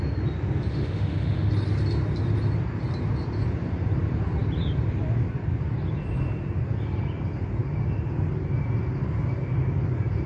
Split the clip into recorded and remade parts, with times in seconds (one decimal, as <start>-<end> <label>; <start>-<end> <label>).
0.0-0.7 recorded; 0.7-1.5 remade; 1.5-10.3 recorded